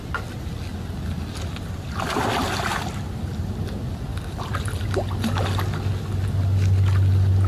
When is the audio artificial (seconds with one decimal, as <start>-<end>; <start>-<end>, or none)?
none